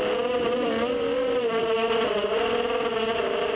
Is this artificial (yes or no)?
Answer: no